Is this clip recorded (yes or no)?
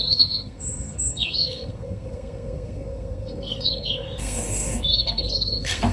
no